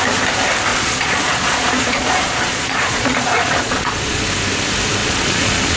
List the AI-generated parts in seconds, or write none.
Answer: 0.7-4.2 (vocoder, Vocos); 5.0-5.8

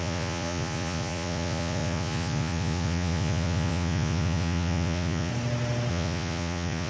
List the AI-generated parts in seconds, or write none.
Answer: 0.0-5.3 (vocoder, Vocos); 5.9-6.9

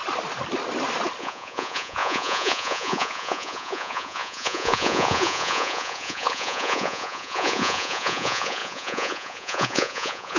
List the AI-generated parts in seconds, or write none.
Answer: 1.2-10.4 (vocoder, Vocos)

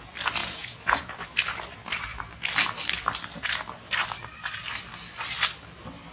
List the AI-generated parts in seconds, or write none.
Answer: 0.4-1.1 (vocoder, Vocos)